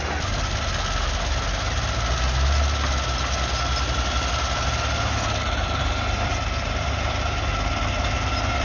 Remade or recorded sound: recorded